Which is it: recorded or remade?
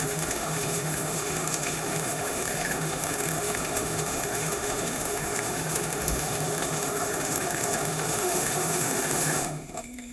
remade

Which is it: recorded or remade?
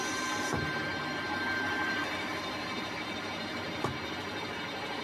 remade